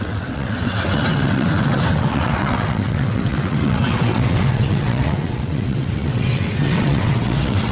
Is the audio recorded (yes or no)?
no